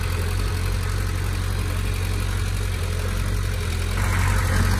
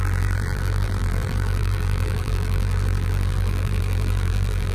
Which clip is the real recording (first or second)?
first